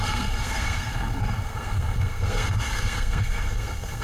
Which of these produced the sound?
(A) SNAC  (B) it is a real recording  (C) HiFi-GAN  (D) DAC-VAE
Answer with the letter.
A